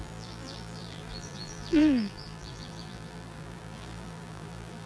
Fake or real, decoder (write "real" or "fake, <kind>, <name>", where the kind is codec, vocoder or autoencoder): fake, vocoder, BigVGAN v2